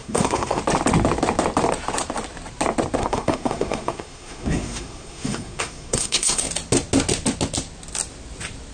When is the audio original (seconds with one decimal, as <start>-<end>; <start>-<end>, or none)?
0.6-3.0; 6.5-8.7

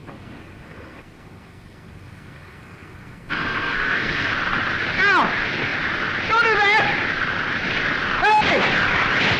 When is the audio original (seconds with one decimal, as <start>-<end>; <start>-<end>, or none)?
4.3-9.4

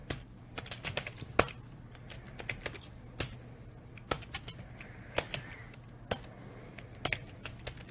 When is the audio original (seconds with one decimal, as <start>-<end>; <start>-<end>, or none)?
0.0-7.9

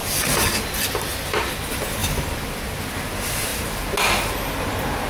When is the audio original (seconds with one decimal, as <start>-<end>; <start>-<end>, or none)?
0.0-5.1

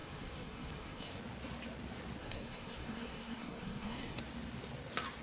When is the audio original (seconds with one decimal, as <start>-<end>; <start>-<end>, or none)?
1.2-2.2; 4.2-5.2

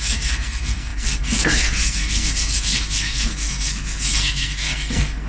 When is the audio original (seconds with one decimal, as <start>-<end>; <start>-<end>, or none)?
none